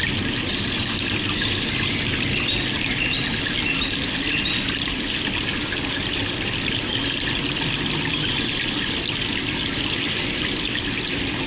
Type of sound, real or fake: real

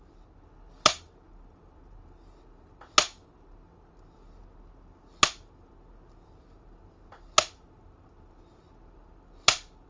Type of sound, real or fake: real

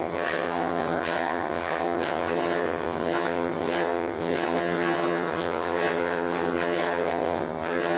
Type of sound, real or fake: fake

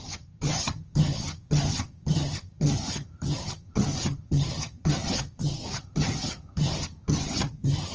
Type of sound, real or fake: fake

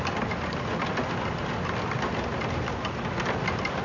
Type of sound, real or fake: real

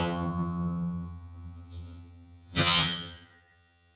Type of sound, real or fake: fake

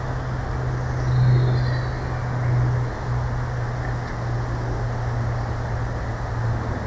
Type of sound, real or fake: real